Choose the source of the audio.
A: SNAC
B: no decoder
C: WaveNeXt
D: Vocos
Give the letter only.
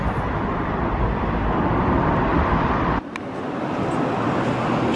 B